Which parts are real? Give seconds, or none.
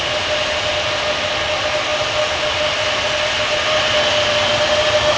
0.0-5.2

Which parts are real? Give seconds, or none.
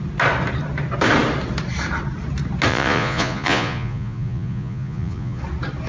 0.0-2.7; 5.4-5.9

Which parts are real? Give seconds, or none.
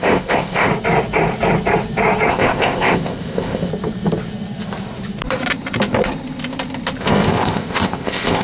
0.7-2.3; 3.7-7.0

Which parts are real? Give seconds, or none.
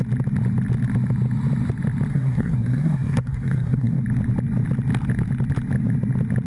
0.0-2.1; 4.0-6.5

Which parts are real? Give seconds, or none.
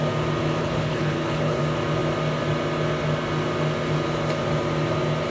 0.0-0.6; 1.6-5.3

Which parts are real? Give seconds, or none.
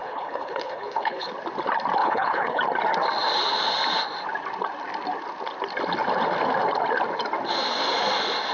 1.3-2.0; 2.6-8.5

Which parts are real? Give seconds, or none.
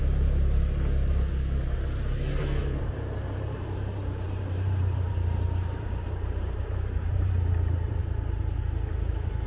0.0-2.6; 7.3-9.5